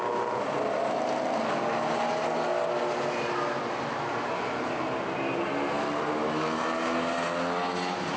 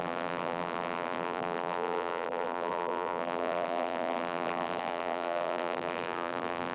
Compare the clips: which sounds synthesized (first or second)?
second